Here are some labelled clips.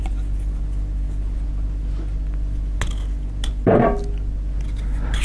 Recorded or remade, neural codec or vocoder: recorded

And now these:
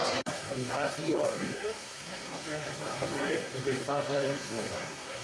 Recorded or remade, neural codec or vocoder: remade, codec, SNAC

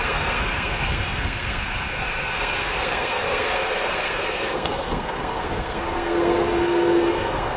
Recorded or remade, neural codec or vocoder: remade, codec, SNAC